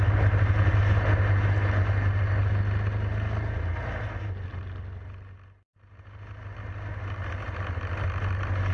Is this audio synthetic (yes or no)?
no